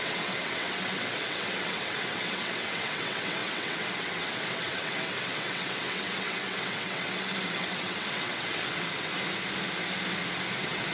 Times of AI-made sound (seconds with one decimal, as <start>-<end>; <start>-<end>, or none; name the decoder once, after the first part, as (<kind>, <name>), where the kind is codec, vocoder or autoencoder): 0.0-9.1 (vocoder, WaveNeXt); 10.5-10.9

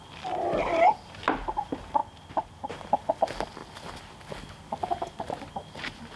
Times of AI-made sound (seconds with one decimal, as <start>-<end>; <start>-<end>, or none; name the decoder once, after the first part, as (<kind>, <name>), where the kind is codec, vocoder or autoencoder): none

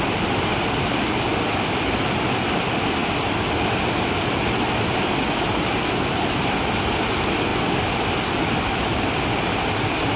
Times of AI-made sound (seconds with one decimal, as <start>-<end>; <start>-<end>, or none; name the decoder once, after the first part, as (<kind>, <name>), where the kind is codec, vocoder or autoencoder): none

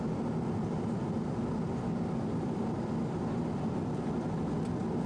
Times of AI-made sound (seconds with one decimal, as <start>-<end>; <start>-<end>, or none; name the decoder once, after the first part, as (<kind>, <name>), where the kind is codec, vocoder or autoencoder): none

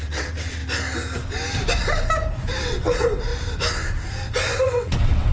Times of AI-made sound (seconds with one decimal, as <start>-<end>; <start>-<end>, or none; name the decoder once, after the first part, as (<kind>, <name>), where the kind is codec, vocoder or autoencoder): 0.0-0.6 (vocoder, WaveNeXt); 2.6-3.3; 4.6-5.3

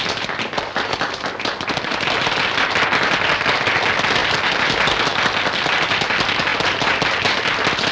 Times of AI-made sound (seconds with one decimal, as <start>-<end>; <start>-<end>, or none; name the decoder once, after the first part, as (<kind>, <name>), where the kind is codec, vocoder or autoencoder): none